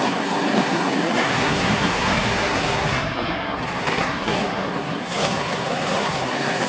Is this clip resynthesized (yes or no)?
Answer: yes